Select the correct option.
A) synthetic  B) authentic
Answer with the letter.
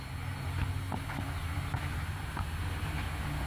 B